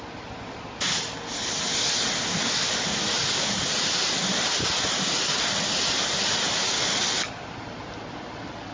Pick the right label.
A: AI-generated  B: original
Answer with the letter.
B